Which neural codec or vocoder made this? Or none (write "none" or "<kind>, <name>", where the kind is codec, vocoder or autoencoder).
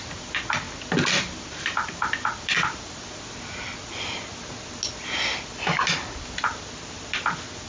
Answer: none